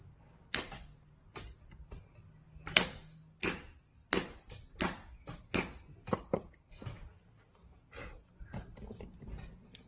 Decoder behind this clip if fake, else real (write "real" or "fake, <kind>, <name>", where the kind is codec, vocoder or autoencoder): real